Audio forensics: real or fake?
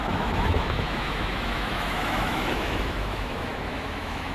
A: fake